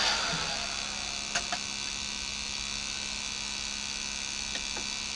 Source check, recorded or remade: recorded